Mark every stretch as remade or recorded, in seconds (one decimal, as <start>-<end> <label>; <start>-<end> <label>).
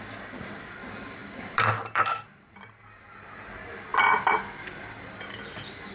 0.0-1.2 recorded; 1.2-3.5 remade; 3.5-3.9 recorded; 3.9-5.9 remade